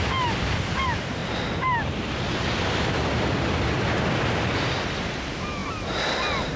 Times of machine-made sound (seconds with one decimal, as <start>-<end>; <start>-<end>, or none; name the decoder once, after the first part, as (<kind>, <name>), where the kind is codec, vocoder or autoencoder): none